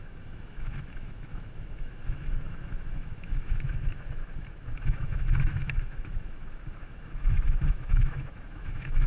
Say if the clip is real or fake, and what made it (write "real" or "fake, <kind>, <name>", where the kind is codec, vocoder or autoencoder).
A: fake, autoencoder, DAC-VAE